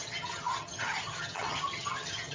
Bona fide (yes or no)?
no